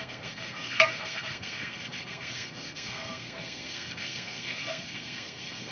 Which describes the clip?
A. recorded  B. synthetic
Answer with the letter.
B